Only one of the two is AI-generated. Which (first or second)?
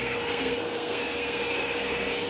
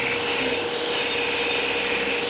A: first